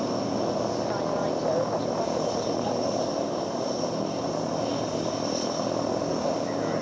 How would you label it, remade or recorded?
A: recorded